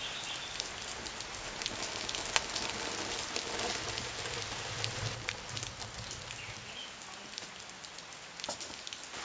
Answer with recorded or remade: recorded